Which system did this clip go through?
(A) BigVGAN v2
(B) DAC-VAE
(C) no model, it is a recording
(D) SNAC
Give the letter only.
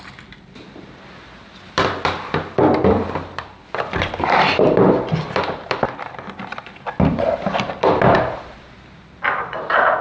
A